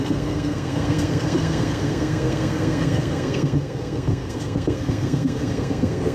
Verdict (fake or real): fake